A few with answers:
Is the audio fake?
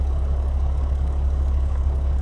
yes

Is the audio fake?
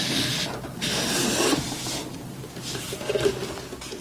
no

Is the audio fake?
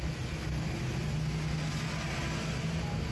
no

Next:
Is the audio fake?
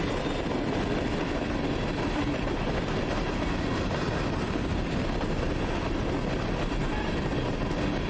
no